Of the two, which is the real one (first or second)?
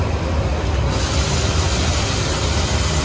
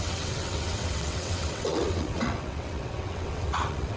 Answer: first